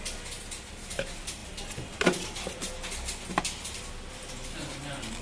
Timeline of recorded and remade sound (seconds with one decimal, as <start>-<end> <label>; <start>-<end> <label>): 0.0-5.2 recorded